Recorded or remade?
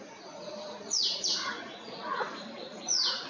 remade